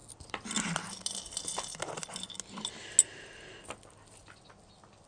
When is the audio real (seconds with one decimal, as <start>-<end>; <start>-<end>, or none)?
0.0-5.1